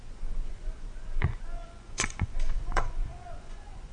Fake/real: fake